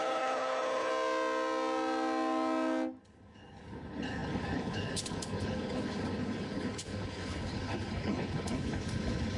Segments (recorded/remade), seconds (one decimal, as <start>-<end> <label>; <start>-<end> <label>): 0.0-0.9 remade; 0.9-3.0 recorded; 3.0-9.4 remade